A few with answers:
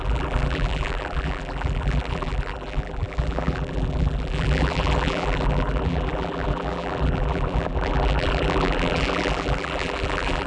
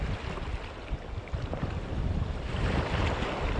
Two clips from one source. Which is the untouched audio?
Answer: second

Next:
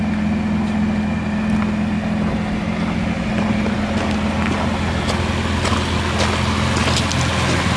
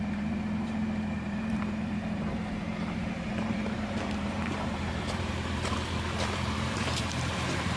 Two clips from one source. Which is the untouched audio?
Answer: first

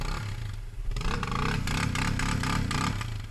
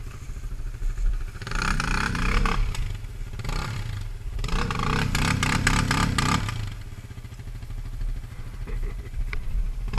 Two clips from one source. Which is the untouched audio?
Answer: first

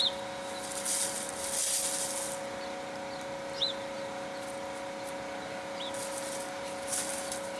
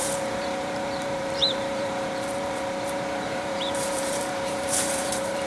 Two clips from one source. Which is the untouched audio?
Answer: first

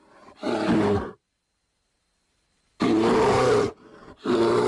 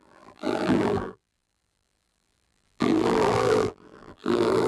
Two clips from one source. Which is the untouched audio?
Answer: first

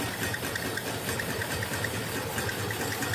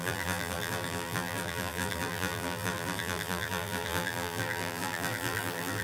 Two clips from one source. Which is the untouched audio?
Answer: first